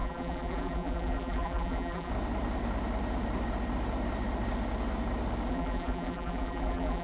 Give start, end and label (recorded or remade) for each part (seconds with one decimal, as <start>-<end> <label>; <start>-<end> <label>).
0.0-2.1 remade; 2.1-5.5 recorded; 5.5-7.0 remade